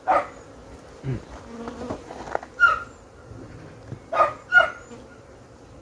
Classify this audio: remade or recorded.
recorded